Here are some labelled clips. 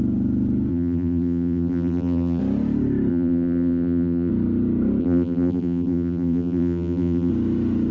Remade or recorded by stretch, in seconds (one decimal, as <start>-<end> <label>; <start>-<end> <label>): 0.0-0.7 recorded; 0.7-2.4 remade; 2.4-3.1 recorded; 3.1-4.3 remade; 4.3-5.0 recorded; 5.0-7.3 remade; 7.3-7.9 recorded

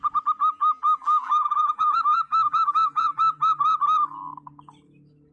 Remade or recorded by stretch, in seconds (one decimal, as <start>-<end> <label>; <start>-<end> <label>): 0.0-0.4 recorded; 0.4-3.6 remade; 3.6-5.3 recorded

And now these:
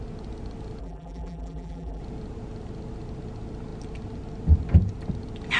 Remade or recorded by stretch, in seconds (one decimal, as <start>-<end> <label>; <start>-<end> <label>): 0.0-0.8 recorded; 0.8-2.0 remade; 2.0-5.6 recorded

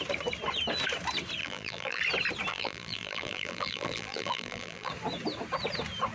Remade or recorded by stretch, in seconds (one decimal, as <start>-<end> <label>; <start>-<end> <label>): 0.0-1.4 recorded; 1.4-2.0 remade; 2.0-2.5 recorded; 2.5-4.9 remade; 4.9-6.1 recorded